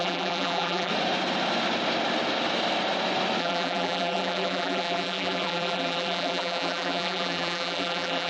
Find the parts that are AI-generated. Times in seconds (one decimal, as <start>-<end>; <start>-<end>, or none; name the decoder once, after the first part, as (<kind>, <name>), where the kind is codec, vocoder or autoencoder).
0.0-0.9 (vocoder, BigVGAN v2); 3.4-8.3